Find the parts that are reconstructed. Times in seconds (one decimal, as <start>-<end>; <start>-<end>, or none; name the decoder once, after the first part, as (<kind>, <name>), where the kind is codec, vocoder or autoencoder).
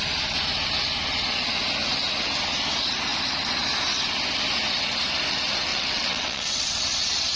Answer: 5.7-6.8 (vocoder, WaveNeXt)